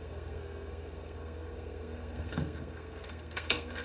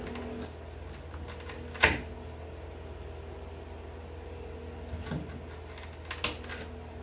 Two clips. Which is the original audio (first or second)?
second